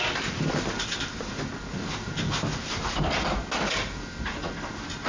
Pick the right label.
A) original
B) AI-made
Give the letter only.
A